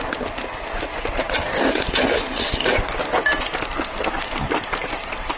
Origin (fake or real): real